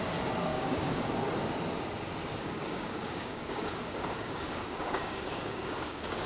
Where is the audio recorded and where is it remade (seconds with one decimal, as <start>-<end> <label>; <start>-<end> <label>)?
0.0-0.5 recorded; 0.5-1.0 remade; 1.0-2.4 recorded; 2.4-6.3 remade

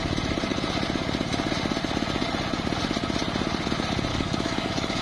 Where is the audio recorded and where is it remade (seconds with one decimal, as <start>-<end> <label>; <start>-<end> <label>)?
0.0-4.1 recorded; 4.1-5.0 remade

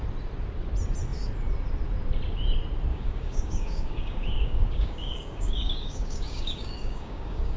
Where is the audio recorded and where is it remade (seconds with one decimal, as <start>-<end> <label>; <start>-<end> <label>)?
0.0-2.9 recorded; 2.9-7.6 remade

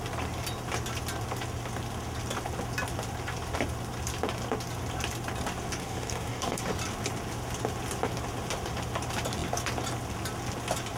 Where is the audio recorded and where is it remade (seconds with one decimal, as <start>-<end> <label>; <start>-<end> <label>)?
0.0-5.8 recorded; 5.8-6.6 remade; 6.6-11.0 recorded

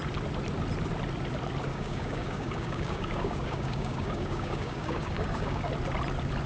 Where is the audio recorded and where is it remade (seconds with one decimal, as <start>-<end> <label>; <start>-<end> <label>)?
0.0-1.7 recorded; 1.7-5.6 remade; 5.6-6.5 recorded

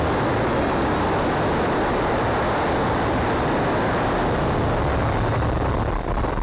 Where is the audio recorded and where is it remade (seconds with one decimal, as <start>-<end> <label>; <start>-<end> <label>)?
0.0-0.5 recorded; 0.5-1.0 remade; 1.0-6.4 recorded

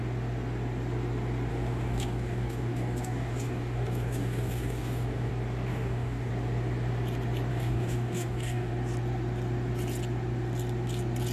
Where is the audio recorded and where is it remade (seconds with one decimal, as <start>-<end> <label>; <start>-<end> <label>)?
0.0-1.5 recorded; 1.5-5.3 remade; 5.3-5.7 recorded; 5.7-6.3 remade; 6.3-7.5 recorded; 7.5-8.7 remade; 8.7-11.3 recorded

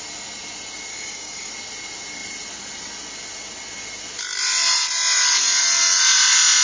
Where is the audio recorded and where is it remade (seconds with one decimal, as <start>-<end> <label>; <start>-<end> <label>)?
0.0-0.9 recorded; 0.9-1.5 remade; 1.5-6.6 recorded